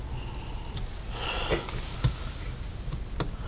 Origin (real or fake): real